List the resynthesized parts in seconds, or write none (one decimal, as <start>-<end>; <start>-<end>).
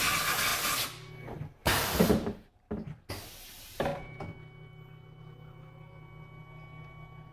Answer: 1.6-3.1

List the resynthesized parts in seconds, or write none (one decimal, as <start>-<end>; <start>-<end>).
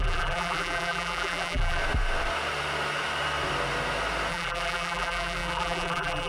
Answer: 0.0-1.8; 4.3-6.3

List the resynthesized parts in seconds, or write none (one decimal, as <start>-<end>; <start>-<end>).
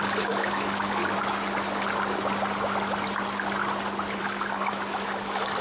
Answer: 0.0-1.0; 4.2-5.6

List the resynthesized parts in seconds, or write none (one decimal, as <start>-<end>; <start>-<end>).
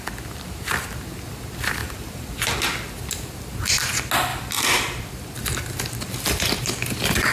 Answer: 1.8-2.5; 4.3-5.1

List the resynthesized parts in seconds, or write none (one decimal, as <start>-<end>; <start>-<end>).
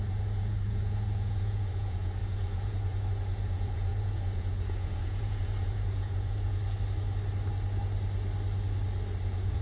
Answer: 0.0-6.6; 9.2-9.6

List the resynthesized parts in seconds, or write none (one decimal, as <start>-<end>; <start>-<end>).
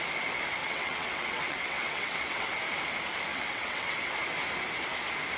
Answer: 0.6-2.5; 3.3-4.1